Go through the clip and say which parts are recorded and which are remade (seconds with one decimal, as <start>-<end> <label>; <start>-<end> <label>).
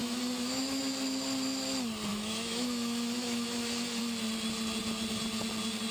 0.0-0.8 remade; 0.8-2.1 recorded; 2.1-4.0 remade; 4.0-5.9 recorded